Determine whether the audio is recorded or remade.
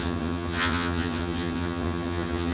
remade